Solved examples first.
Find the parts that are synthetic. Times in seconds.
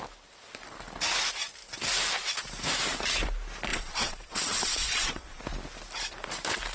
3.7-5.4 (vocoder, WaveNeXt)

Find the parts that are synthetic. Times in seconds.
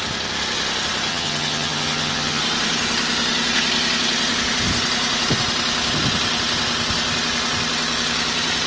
1.1-2.4 (vocoder, HiFi-GAN)